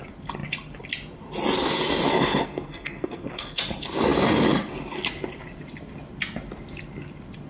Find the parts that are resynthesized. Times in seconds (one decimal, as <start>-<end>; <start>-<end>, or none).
2.1-3.6